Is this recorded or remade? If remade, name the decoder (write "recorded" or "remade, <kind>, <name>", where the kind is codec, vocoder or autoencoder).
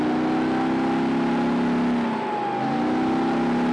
recorded